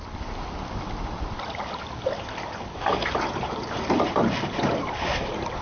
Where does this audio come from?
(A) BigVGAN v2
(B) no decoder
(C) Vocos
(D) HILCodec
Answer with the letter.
B